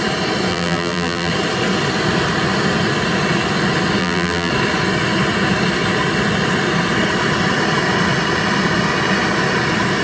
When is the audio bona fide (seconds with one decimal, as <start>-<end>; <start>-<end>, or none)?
0.0-0.5; 1.3-4.0; 4.5-10.0